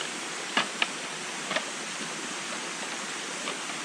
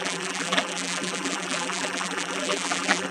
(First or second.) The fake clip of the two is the second